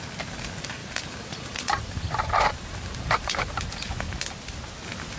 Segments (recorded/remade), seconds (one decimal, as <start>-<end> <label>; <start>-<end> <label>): 0.0-0.8 recorded; 0.8-3.9 remade; 3.9-5.2 recorded